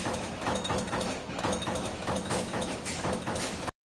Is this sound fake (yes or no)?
yes